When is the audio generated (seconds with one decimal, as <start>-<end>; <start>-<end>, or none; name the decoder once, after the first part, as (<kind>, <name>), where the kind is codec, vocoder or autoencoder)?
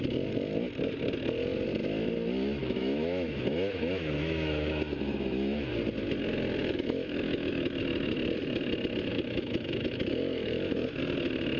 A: 2.6-5.7 (autoencoder, DAC-VAE); 6.6-7.8; 9.1-11.0